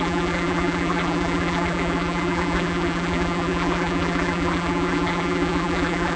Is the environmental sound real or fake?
fake